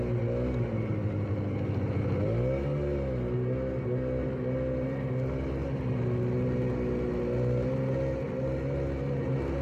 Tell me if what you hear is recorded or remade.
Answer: recorded